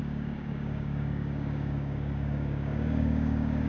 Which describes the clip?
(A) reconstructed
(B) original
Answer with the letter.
A